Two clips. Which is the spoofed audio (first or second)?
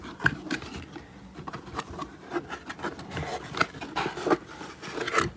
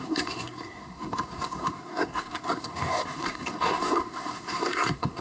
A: second